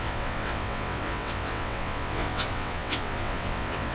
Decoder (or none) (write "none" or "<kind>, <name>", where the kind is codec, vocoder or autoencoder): vocoder, WaveNeXt